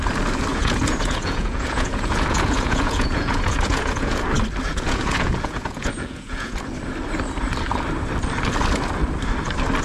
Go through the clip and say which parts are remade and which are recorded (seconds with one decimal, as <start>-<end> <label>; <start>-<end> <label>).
0.0-0.5 recorded; 0.5-4.2 remade; 4.2-4.7 recorded; 4.7-6.5 remade; 6.5-9.8 recorded